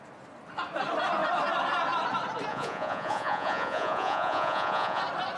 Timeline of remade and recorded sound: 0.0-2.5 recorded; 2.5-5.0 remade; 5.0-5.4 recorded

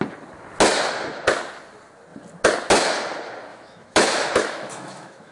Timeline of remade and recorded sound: 0.0-3.5 recorded; 3.5-5.3 remade

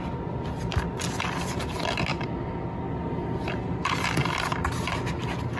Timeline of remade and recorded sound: 0.0-5.6 recorded